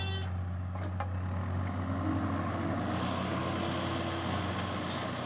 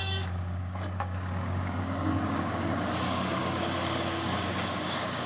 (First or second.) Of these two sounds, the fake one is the second